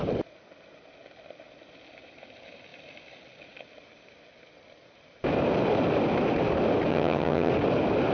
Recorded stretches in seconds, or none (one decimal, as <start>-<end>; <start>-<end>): 0.0-6.9; 7.5-8.1